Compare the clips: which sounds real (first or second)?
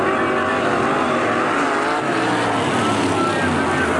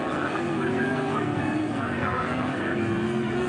first